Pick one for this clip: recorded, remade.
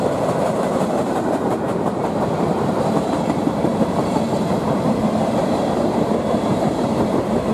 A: remade